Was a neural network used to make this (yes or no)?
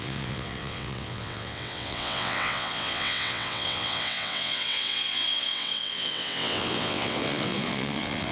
yes